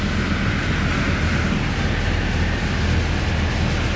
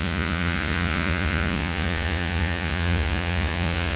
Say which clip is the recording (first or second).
first